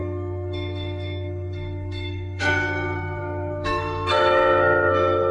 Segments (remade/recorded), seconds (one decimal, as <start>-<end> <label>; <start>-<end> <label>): 0.0-5.3 remade